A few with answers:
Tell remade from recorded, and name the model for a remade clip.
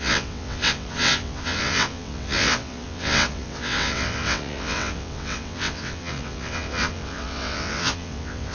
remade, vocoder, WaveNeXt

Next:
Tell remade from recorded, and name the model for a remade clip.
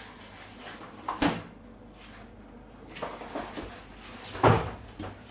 recorded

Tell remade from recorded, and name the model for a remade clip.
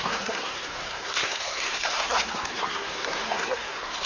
remade, codec, SNAC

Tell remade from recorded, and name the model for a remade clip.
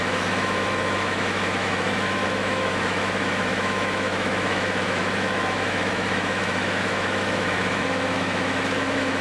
remade, autoencoder, DAC-VAE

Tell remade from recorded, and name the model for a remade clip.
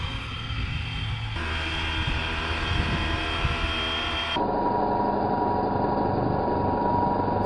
recorded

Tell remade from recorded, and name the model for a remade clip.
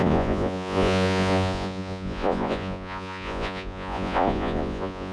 remade, vocoder, Vocos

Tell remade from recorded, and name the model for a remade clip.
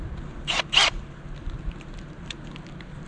recorded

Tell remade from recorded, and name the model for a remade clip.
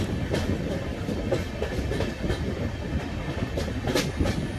recorded